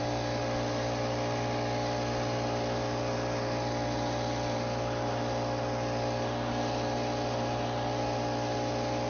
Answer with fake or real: real